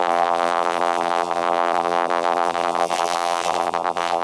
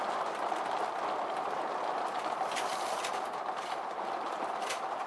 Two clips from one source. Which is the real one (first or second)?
second